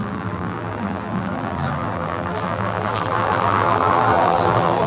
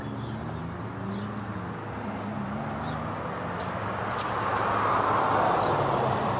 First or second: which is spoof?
first